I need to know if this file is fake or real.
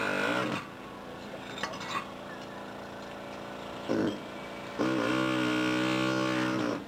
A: real